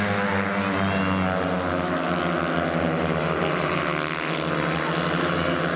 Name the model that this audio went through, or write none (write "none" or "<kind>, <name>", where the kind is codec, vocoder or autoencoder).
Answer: none